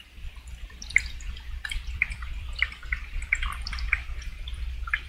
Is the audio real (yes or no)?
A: no